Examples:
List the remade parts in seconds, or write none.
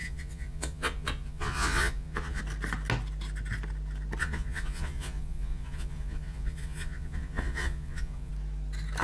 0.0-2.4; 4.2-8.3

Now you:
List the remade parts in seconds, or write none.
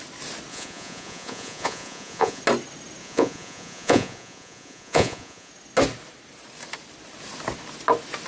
0.5-2.4; 3.0-5.5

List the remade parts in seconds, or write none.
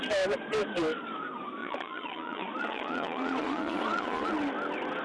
1.6-4.3